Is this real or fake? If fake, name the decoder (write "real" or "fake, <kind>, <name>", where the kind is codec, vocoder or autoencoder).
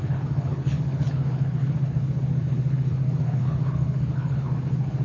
fake, codec, HILCodec